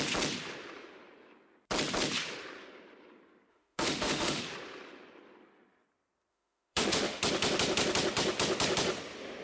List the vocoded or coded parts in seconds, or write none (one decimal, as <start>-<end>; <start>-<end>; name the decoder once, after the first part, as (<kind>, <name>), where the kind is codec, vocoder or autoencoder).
3.5-4.4 (autoencoder, DAC-VAE); 6.3-7.2